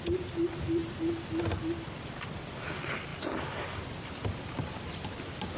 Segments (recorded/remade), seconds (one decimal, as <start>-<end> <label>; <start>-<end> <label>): 0.0-5.6 recorded